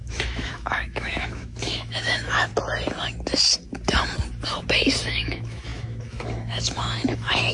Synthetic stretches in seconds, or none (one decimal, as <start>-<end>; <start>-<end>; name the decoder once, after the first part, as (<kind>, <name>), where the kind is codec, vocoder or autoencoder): 0.0-2.5 (autoencoder, DAC-VAE); 5.0-7.5